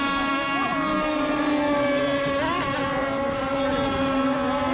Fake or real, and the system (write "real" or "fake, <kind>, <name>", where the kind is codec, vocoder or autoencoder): real